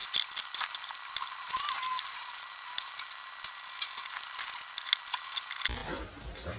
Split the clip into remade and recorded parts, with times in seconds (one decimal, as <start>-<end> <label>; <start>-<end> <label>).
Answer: 0.0-6.6 recorded